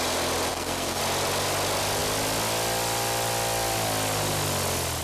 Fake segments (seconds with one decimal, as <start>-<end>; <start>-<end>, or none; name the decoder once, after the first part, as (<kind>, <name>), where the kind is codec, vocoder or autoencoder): 0.5-1.0 (codec, SNAC)